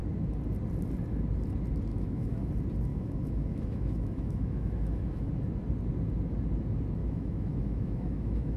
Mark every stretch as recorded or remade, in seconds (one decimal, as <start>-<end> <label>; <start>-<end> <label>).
0.0-1.9 recorded; 1.9-2.5 remade; 2.5-2.9 recorded; 2.9-5.3 remade; 5.3-7.0 recorded; 7.0-8.6 remade